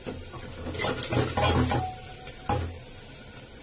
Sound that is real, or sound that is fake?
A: real